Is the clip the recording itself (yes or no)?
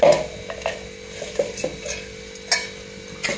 yes